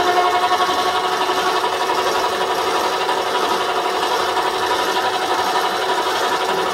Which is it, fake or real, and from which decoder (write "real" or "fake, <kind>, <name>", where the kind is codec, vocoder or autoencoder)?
real